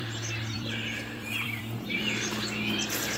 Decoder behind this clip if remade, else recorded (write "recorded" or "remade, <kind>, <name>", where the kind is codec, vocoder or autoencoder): remade, vocoder, BigVGAN v2